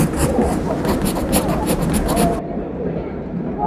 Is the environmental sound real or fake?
real